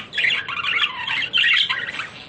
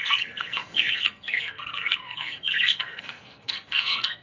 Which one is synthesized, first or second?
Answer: second